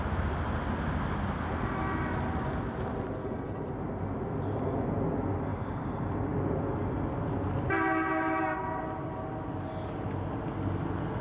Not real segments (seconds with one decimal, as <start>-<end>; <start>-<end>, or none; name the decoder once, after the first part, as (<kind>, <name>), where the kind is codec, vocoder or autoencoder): 3.2-3.7 (codec, HILCodec)